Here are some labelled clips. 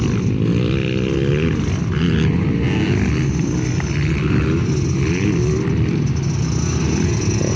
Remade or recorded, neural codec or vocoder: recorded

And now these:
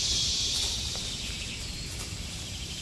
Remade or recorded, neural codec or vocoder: remade, vocoder, BigVGAN v2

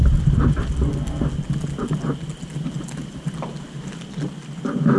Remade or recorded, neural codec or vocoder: recorded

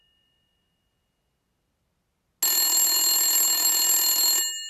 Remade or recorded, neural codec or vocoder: recorded